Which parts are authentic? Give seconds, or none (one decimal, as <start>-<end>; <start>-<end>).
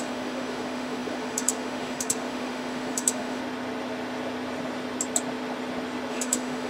3.4-6.1